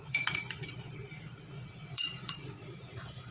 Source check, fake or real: fake